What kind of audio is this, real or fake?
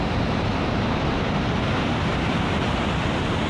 fake